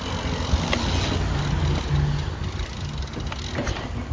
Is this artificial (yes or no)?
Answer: no